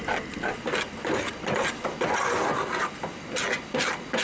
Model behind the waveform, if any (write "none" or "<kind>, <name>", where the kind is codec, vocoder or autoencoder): none